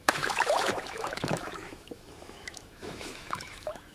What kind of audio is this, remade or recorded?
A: remade